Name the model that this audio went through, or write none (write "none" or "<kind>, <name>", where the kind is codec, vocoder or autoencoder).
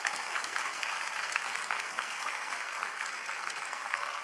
codec, SNAC